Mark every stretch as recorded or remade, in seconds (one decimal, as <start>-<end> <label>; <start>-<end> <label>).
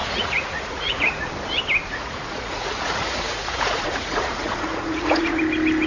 0.0-1.3 remade; 1.3-1.9 recorded; 1.9-5.4 remade; 5.4-5.9 recorded